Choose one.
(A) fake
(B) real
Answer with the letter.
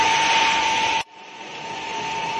A